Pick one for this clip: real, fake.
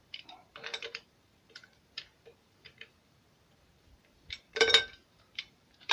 fake